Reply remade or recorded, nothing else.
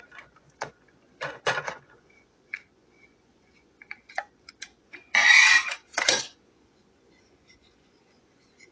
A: remade